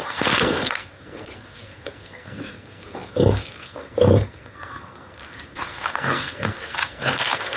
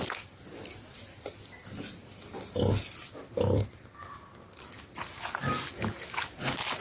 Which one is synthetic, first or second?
first